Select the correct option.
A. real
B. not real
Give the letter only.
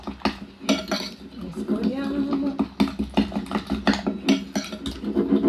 A